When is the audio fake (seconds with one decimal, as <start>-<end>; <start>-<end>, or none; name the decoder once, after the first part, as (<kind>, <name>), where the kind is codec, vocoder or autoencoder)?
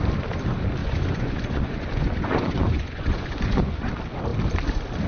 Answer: 0.8-3.9 (vocoder, Vocos)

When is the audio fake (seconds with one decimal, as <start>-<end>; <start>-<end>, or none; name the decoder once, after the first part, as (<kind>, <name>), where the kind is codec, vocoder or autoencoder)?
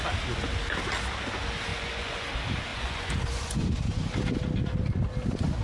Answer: 1.7-2.3 (vocoder, Vocos); 2.7-4.1